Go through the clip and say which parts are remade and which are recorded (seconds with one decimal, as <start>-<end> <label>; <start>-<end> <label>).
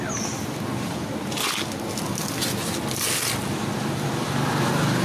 0.0-5.0 recorded